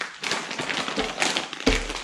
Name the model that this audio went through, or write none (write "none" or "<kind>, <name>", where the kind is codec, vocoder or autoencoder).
none